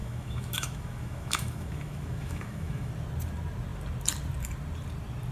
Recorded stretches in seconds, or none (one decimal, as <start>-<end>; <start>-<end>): 2.9-5.3